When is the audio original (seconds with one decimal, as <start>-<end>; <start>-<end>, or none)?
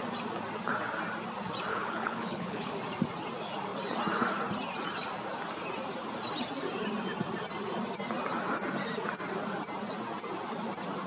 0.0-1.7; 2.7-11.1